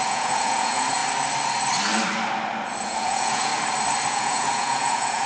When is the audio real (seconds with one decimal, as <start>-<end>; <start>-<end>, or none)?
1.0-2.8; 3.5-4.1